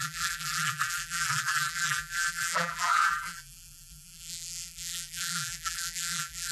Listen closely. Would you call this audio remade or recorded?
remade